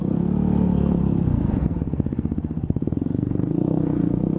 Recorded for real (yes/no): no